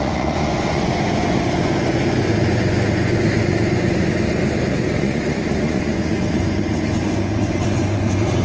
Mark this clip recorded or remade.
remade